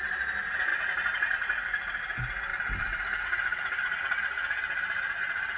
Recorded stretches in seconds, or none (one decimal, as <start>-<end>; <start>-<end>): 0.0-0.7; 2.0-5.6